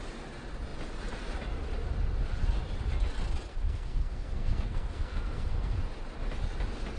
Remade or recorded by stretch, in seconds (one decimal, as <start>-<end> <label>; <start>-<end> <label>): 0.0-3.5 recorded; 3.5-5.8 remade; 5.8-7.0 recorded